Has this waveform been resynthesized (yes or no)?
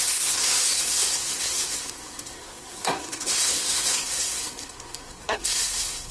yes